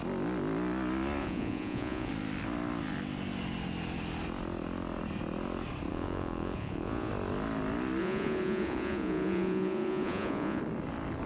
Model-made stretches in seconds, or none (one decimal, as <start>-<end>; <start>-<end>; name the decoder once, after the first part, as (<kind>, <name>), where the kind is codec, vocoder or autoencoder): 1.2-2.1 (vocoder, Vocos); 5.9-7.1; 8.0-10.6